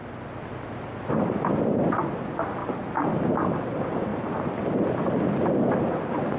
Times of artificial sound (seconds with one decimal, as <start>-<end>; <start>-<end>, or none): none